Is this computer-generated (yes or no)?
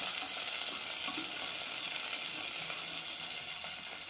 no